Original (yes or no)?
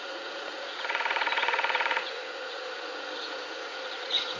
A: no